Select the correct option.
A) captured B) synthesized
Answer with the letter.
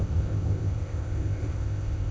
B